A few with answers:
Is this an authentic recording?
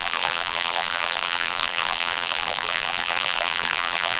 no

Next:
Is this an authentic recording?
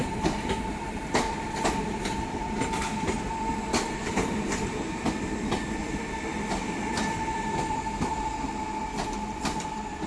no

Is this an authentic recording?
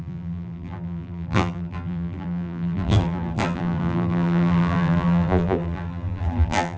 no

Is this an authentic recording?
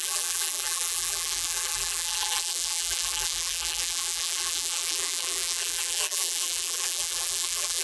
no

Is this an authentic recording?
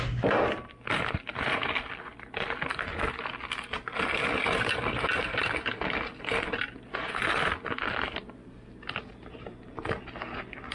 yes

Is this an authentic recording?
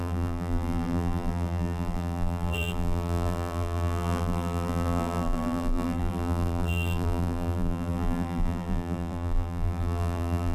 no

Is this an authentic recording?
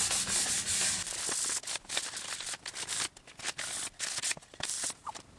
yes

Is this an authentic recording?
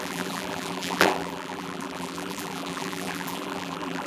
no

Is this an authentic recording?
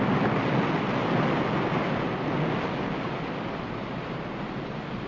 yes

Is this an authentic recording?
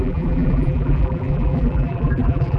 no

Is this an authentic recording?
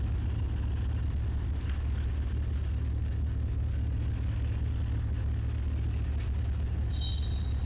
yes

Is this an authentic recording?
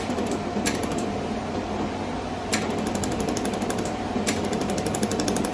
no